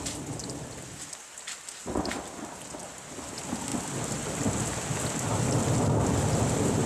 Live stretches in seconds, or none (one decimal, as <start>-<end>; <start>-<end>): 0.0-6.9